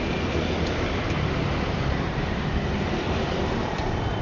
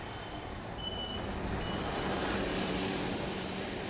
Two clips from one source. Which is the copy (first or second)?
first